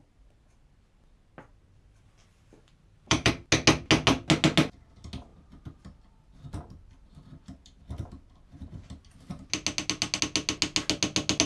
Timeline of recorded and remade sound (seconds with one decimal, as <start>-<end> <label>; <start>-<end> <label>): 0.0-1.5 recorded; 1.5-3.3 remade; 3.3-5.3 recorded; 5.3-9.0 remade; 9.0-11.5 recorded